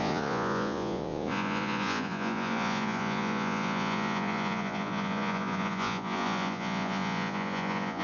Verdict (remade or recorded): remade